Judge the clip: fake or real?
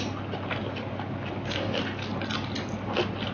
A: real